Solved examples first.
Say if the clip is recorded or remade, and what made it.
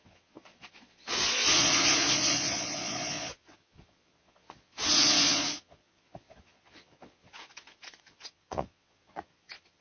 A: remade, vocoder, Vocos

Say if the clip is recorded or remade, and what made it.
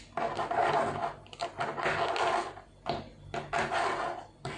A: recorded